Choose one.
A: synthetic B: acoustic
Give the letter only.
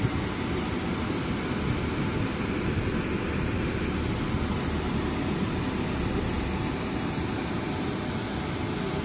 B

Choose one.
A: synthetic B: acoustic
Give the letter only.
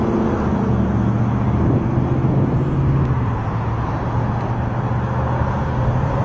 B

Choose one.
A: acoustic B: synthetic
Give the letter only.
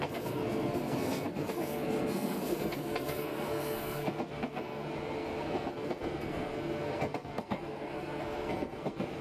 B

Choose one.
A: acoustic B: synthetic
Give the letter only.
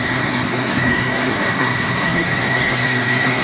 B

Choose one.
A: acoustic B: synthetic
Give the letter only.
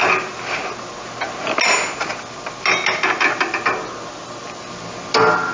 A